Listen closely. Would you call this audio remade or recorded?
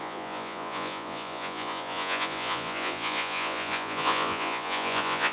remade